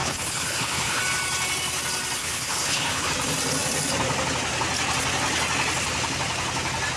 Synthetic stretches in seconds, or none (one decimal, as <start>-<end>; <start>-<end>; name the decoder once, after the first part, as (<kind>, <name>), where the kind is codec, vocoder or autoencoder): 0.0-1.0 (codec, HILCodec); 2.2-3.1